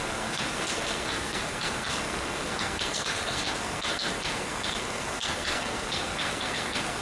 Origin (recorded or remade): remade